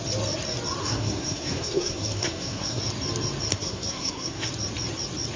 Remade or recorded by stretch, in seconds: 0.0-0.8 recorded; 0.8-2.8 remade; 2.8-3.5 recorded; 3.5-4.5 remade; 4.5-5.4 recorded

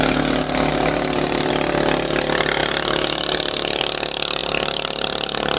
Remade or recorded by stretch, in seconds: 0.0-0.7 recorded; 0.7-1.5 remade; 1.5-2.6 recorded; 2.6-3.8 remade; 3.8-5.6 recorded

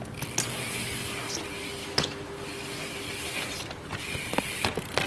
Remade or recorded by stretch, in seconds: 0.0-1.8 recorded; 1.8-2.4 remade; 2.4-5.1 recorded

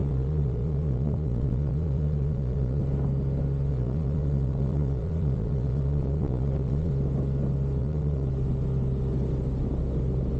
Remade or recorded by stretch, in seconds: 0.0-2.8 remade; 2.8-3.7 recorded; 3.7-6.9 remade; 6.9-7.8 recorded; 7.8-8.3 remade; 8.3-10.4 recorded

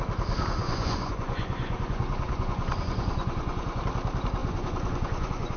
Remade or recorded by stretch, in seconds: 0.0-0.6 recorded; 0.6-3.8 remade; 3.8-4.4 recorded; 4.4-5.6 remade

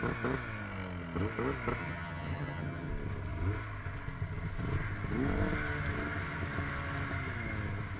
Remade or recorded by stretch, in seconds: 0.0-1.8 recorded; 1.8-2.9 remade; 2.9-8.0 recorded

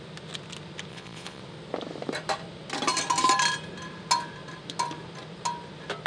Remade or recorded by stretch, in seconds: 0.0-0.9 recorded; 0.9-1.4 remade; 1.4-6.1 recorded

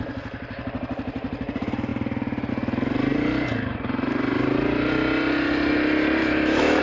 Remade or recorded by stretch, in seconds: 0.0-6.2 recorded; 6.2-6.8 remade